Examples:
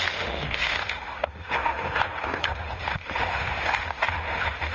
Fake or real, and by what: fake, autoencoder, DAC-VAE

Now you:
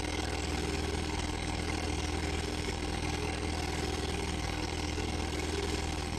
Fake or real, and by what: fake, codec, SNAC